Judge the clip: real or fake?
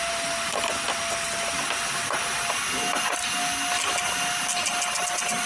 real